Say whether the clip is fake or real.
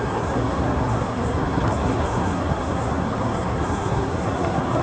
fake